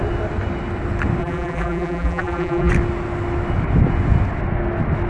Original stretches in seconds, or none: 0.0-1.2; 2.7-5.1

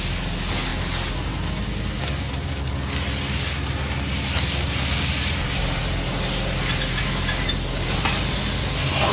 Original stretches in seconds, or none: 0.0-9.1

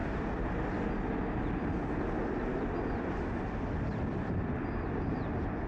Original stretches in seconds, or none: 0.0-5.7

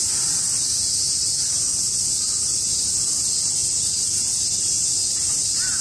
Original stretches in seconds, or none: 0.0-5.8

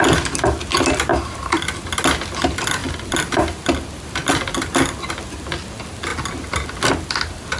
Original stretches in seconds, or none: 0.0-1.1; 1.6-2.8; 5.1-7.6